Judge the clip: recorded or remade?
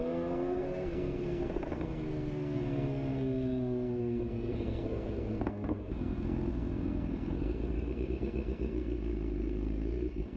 remade